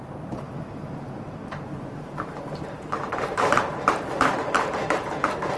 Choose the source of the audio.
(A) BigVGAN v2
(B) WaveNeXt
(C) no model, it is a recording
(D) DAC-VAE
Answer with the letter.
A